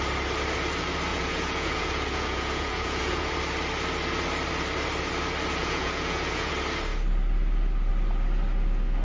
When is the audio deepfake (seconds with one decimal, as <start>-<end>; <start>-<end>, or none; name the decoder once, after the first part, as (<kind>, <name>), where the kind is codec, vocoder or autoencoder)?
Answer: 1.1-3.3 (vocoder, Vocos); 5.6-6.5